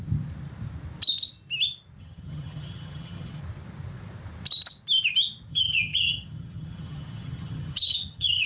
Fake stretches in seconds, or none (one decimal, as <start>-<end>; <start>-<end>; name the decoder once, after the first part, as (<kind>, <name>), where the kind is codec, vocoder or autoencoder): 2.0-3.4 (vocoder, HiFi-GAN); 5.5-8.5